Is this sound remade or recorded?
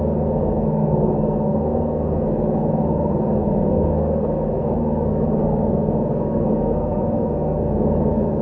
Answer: remade